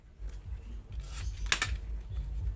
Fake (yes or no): no